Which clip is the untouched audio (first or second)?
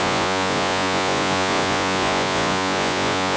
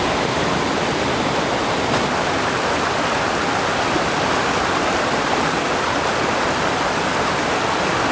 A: second